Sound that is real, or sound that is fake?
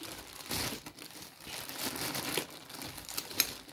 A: real